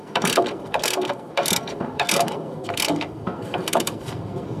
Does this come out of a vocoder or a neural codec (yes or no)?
yes